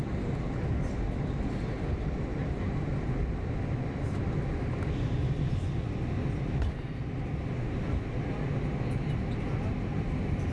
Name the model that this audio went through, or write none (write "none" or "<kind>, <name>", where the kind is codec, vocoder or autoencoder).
none